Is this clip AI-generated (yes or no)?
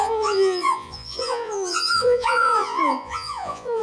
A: yes